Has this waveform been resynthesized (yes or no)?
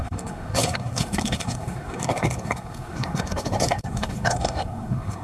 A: yes